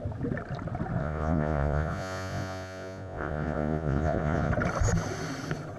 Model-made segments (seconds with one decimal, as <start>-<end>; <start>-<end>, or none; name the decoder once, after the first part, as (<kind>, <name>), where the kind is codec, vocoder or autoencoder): 1.0-4.5 (vocoder, Vocos)